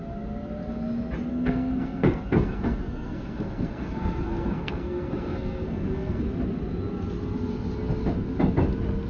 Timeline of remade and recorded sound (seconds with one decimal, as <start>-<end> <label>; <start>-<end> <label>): 0.0-1.3 recorded; 1.3-6.2 remade; 6.2-9.1 recorded